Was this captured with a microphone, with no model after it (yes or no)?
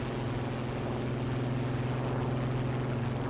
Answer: yes